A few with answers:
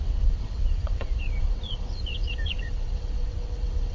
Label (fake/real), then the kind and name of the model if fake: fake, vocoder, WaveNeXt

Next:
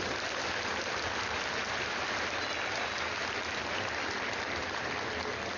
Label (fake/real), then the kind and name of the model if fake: real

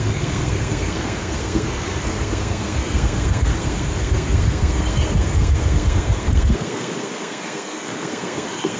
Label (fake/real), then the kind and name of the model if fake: fake, codec, SNAC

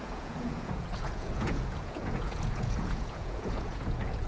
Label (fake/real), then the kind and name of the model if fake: fake, vocoder, Vocos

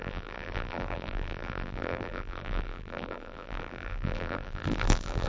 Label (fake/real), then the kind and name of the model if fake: fake, vocoder, BigVGAN v2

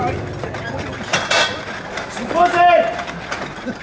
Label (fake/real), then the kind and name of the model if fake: real